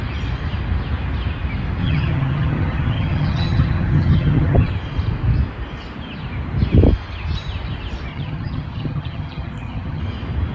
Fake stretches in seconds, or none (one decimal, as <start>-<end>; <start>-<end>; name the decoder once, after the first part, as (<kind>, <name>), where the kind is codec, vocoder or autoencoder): 1.8-4.7 (vocoder, HiFi-GAN); 8.1-10.0